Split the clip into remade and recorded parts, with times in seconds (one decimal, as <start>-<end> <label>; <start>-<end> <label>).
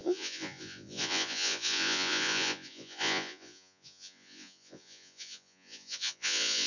0.0-6.7 remade